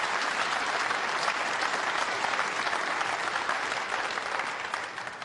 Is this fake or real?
real